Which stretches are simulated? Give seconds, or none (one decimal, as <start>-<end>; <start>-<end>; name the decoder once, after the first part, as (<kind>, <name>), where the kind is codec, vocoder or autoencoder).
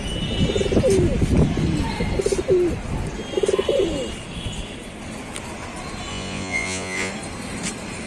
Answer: 6.1-7.1 (vocoder, Vocos)